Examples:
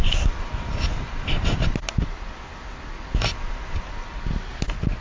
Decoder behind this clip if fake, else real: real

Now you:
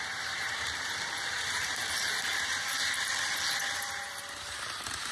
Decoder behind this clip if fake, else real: fake, vocoder, BigVGAN v2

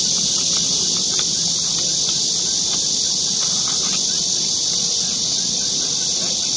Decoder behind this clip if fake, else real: real